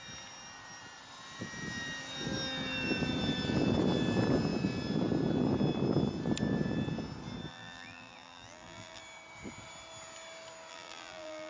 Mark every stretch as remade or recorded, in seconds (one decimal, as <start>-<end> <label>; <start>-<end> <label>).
0.0-7.5 recorded; 7.5-9.0 remade; 9.0-10.7 recorded; 10.7-11.5 remade